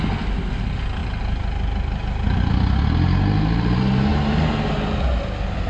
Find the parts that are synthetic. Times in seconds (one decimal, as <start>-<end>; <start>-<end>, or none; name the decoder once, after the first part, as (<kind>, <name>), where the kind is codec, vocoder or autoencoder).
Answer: none